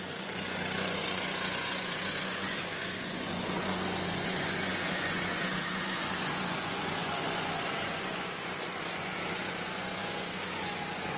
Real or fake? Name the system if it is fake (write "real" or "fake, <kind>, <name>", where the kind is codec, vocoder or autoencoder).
fake, vocoder, Vocos